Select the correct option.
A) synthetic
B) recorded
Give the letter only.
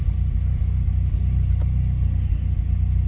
B